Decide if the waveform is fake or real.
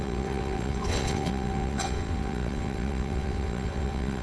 fake